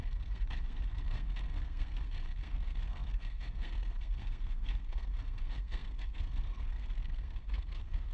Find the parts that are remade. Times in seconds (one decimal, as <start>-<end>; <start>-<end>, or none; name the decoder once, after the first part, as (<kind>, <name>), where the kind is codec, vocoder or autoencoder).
0.0-8.1 (codec, SNAC)